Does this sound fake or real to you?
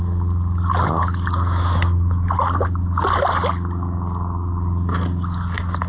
real